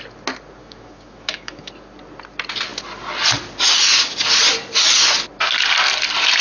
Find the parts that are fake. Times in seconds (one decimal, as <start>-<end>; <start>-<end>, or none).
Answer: 0.6-1.7